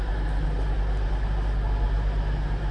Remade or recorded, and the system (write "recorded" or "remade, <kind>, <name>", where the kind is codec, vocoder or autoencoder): recorded